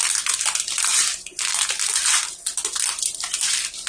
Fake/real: real